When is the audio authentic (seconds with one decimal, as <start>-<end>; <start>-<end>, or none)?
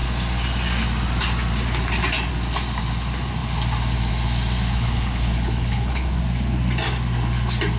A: 0.0-4.7; 6.2-7.8